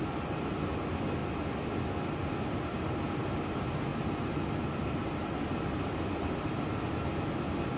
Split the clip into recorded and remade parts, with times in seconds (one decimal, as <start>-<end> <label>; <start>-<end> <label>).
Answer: 0.0-3.9 recorded; 3.9-6.3 remade; 6.3-7.8 recorded